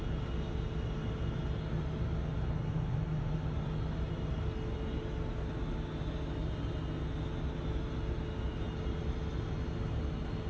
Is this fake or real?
real